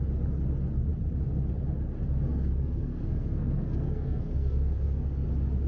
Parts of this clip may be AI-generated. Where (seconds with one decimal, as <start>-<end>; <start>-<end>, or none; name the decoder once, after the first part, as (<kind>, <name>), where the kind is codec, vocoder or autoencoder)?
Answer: 2.3-5.3 (codec, SNAC)

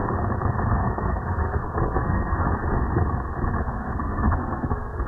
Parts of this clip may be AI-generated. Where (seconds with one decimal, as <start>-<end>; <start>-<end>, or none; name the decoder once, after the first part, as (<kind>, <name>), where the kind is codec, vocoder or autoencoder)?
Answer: 0.7-2.4 (codec, SNAC); 3.6-5.1